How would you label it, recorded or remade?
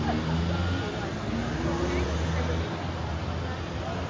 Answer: recorded